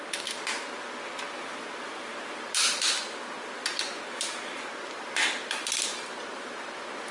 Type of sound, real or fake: real